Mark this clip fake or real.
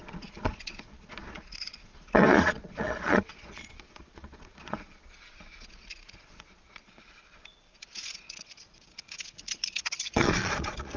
fake